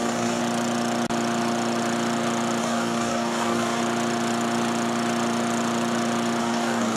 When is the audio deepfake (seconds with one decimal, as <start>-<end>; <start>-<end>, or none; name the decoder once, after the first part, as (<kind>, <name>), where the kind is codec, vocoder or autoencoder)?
0.0-0.4 (codec, DAC); 2.6-3.8; 6.4-7.0